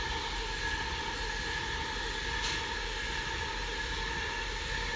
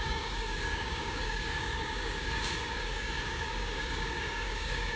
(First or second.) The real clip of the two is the first